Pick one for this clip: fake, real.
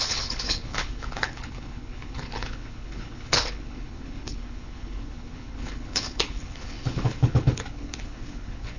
fake